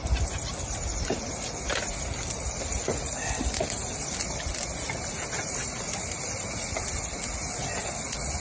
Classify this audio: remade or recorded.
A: recorded